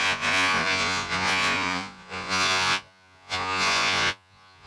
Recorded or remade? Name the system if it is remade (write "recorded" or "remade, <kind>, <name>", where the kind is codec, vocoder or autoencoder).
remade, vocoder, Vocos